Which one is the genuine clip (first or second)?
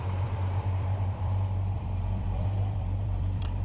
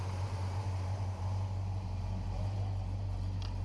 second